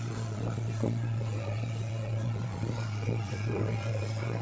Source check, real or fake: fake